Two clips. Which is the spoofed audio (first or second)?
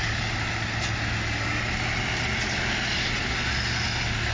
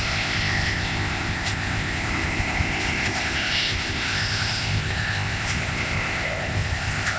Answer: second